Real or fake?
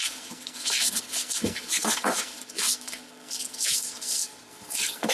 fake